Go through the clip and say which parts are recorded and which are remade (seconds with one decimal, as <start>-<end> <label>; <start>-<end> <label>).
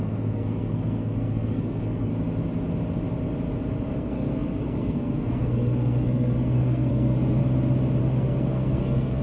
0.0-2.1 remade; 2.1-3.9 recorded; 3.9-7.4 remade; 7.4-8.0 recorded; 8.0-9.2 remade